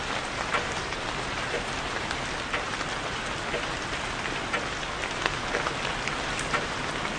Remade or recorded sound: recorded